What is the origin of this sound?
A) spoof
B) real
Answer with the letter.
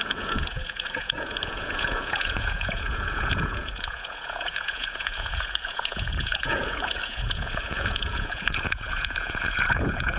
A